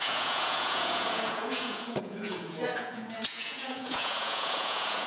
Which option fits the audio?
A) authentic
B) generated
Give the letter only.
B